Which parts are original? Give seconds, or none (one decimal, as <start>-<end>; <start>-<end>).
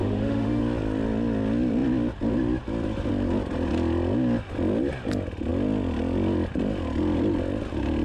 0.6-8.0